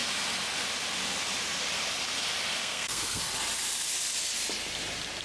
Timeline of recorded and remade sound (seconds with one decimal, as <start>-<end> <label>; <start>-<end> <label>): 0.0-2.6 recorded; 2.6-3.2 remade; 3.2-5.2 recorded